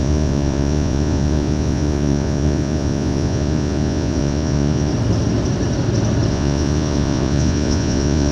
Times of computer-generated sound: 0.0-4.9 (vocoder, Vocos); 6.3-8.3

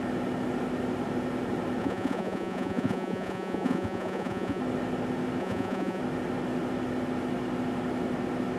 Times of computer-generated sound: 1.8-4.6 (vocoder, Vocos); 5.4-6.0

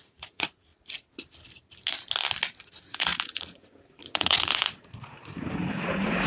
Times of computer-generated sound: 0.0-0.7 (vocoder, Vocos); 2.7-6.3

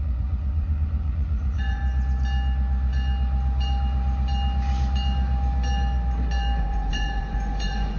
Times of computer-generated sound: 0.0-1.8 (vocoder, Vocos); 6.6-8.0

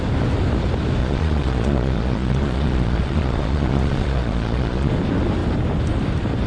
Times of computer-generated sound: 1.0-4.9 (vocoder, Vocos)

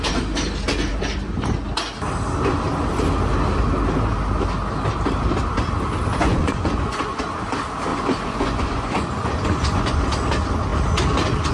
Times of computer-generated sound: 6.3-7.2 (vocoder, Vocos); 7.9-10.0